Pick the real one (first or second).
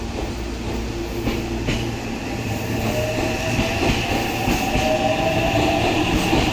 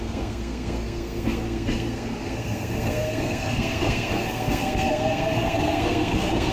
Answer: first